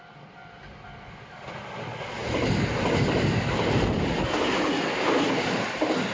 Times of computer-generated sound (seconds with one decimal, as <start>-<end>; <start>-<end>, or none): none